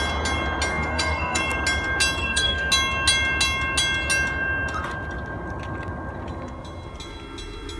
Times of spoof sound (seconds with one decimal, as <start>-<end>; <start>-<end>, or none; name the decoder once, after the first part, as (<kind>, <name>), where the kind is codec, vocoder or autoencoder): 0.7-1.4 (codec, SNAC); 2.2-2.7